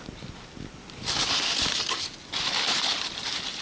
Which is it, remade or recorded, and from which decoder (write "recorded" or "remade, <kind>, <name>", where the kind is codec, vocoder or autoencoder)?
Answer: recorded